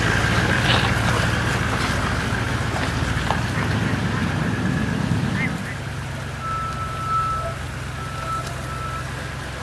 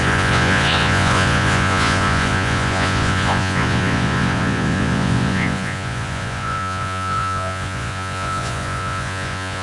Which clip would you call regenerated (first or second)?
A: second